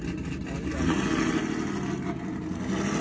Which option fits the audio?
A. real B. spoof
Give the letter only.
A